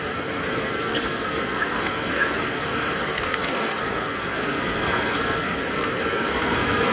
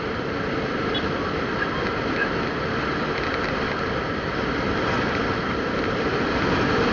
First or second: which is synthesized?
first